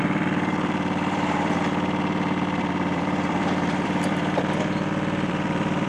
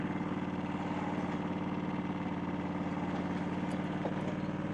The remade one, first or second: first